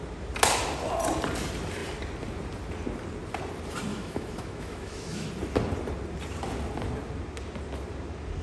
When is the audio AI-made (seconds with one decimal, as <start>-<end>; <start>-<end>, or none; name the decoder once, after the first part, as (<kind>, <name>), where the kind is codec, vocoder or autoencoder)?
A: 3.9-5.3 (autoencoder, DAC-VAE)